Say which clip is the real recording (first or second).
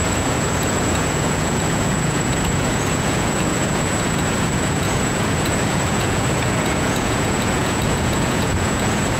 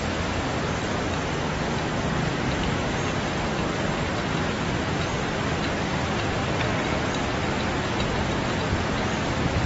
second